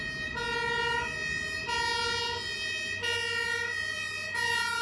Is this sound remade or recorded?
recorded